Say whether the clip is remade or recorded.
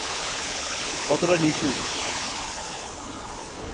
remade